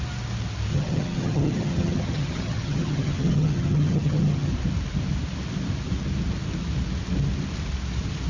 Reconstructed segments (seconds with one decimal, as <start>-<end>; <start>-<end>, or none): 0.7-4.5